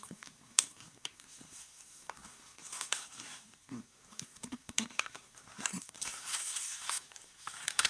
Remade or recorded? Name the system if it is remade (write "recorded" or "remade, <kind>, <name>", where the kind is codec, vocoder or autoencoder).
remade, codec, SNAC